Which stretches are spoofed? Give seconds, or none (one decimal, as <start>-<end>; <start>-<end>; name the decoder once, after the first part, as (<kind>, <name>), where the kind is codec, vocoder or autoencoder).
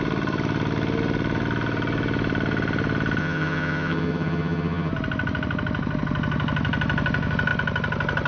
3.2-4.9 (vocoder, HiFi-GAN)